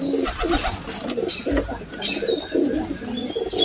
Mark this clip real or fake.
real